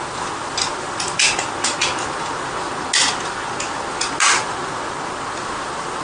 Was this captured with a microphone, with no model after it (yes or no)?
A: yes